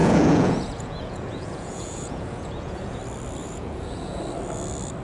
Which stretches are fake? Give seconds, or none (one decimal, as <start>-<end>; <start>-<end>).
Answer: 0.0-3.0; 3.4-4.2